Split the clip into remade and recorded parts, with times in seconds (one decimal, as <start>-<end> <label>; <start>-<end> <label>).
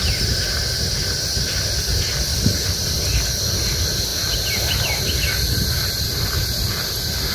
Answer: 0.0-2.3 recorded; 2.3-2.9 remade; 2.9-7.3 recorded